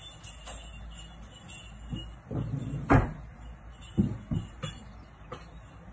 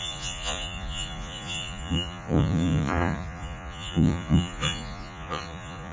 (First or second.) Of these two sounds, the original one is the first